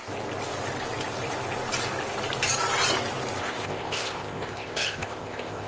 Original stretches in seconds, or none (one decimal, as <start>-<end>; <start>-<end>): 0.0-3.4